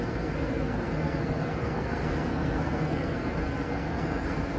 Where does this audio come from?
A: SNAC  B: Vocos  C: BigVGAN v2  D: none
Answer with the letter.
A